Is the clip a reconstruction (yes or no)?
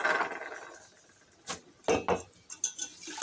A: no